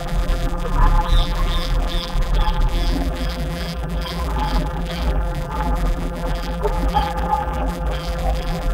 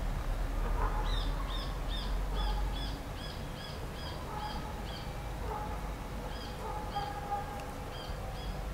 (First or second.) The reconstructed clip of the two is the first